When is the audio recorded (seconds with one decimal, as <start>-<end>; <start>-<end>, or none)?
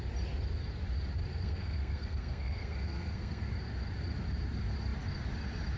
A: 0.0-1.3; 3.5-5.8